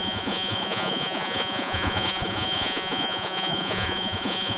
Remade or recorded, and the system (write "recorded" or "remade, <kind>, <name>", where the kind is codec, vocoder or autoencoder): remade, vocoder, Vocos